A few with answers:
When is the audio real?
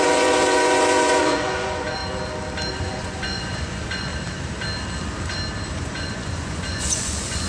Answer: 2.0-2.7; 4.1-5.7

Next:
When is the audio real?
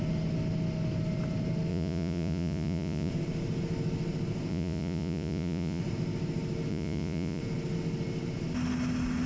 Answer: 0.0-1.7; 3.1-4.5; 5.8-6.7; 7.4-9.3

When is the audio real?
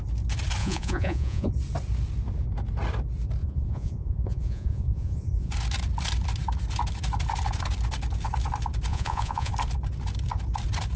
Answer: 0.0-0.6; 1.5-3.4; 5.5-8.9; 9.5-11.0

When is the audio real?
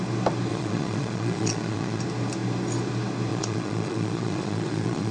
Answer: 0.0-0.5; 2.0-3.3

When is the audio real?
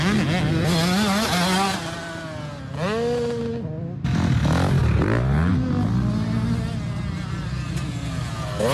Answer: 0.0-8.7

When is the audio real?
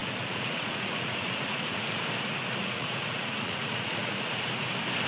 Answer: 2.0-2.6; 4.5-5.1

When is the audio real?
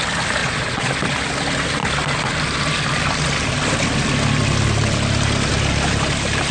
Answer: 0.0-0.4; 0.9-6.5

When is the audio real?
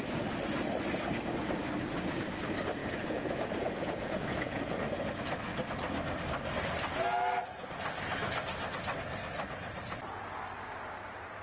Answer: 0.0-2.8; 4.6-11.4